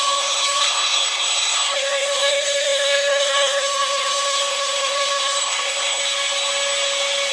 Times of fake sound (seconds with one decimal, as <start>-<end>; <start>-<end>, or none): 0.0-6.0